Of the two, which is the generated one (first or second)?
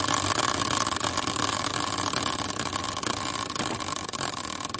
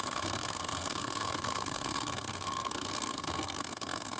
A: second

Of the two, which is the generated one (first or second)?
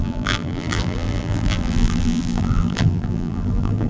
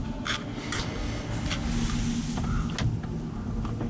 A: first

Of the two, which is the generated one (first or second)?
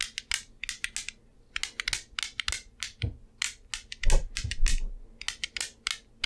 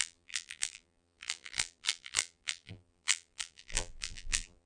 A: second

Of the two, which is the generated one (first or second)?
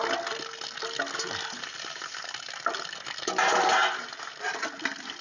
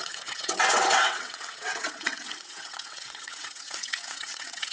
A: second